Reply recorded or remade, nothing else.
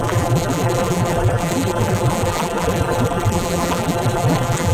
remade